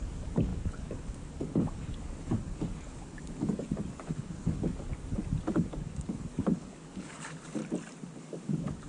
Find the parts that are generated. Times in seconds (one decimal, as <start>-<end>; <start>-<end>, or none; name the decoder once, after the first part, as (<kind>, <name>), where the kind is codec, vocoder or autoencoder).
0.0-4.9 (codec, DAC); 5.5-7.6; 8.2-8.9